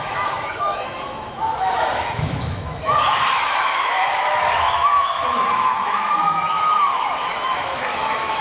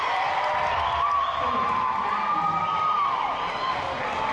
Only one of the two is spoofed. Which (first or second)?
first